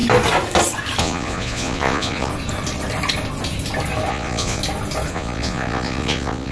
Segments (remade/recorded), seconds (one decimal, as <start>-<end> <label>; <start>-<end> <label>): 0.0-1.0 recorded; 1.0-2.3 remade; 2.3-4.1 recorded; 4.1-4.6 remade; 4.6-5.1 recorded; 5.1-6.5 remade

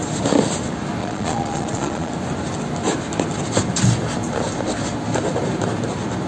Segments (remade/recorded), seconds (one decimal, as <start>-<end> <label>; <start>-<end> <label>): 0.0-1.0 recorded; 1.0-2.1 remade; 2.1-6.3 recorded

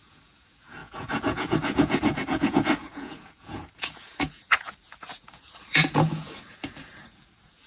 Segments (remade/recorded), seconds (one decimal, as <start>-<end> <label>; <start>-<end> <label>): 0.0-7.7 remade

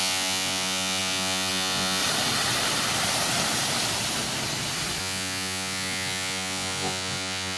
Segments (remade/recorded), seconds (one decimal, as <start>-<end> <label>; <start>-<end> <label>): 0.0-2.0 remade; 2.0-5.0 recorded; 5.0-7.6 remade

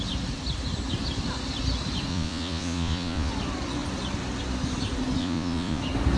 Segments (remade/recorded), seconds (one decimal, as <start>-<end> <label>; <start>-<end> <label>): 0.0-2.1 recorded; 2.1-3.3 remade; 3.3-5.2 recorded; 5.2-5.8 remade; 5.8-6.2 recorded